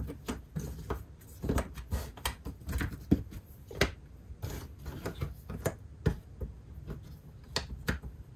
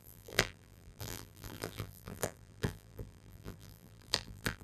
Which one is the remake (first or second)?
second